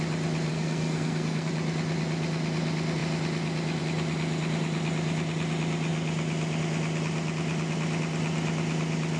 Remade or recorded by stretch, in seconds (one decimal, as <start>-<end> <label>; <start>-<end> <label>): 0.0-0.5 recorded; 0.5-1.5 remade; 1.5-9.2 recorded